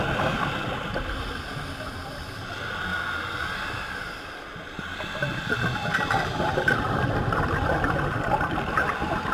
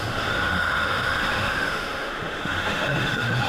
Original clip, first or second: first